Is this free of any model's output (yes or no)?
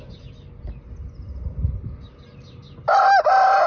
yes